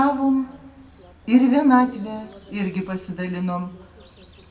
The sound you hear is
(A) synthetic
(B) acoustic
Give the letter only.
B